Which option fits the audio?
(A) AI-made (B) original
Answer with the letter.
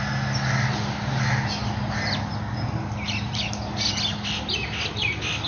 B